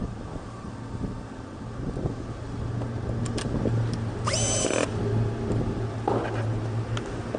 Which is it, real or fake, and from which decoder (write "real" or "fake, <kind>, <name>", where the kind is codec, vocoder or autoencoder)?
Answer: real